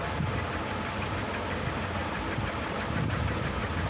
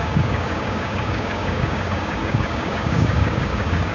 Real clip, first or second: first